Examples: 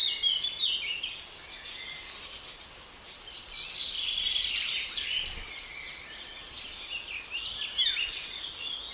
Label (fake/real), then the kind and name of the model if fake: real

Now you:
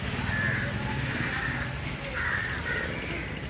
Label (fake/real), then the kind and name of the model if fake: real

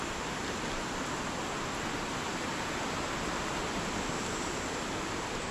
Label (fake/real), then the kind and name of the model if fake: real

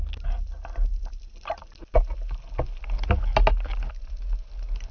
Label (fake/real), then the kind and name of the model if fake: real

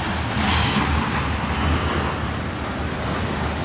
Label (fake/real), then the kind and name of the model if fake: real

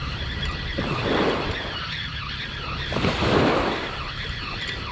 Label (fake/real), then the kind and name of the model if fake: real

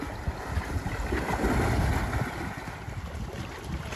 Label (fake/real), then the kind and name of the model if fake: real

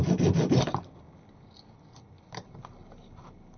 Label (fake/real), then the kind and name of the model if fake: real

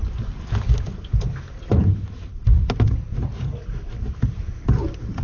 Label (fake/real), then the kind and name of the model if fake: real